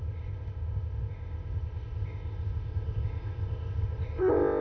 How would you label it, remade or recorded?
remade